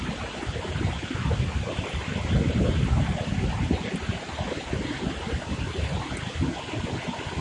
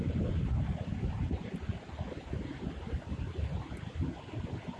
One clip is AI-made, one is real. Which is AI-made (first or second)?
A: second